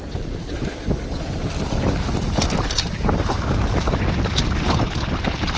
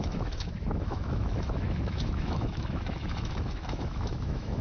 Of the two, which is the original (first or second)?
first